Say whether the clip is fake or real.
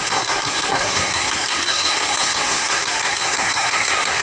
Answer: fake